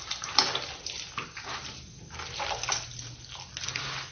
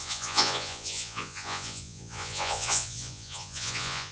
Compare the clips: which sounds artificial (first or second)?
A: second